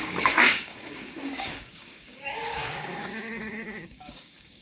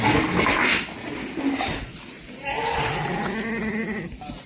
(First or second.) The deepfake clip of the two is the first